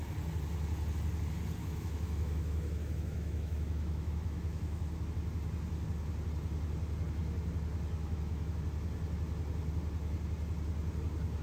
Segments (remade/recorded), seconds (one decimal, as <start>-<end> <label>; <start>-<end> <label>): 0.0-1.6 recorded; 1.6-5.0 remade; 5.0-8.0 recorded; 8.0-8.5 remade; 8.5-11.4 recorded